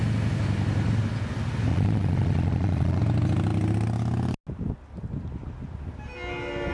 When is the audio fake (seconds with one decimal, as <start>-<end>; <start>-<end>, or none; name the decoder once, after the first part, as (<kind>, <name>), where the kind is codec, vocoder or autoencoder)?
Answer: 1.7-3.0 (vocoder, Vocos)